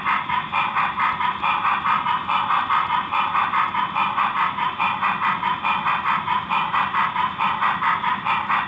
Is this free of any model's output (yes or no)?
yes